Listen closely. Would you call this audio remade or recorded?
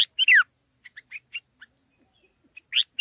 recorded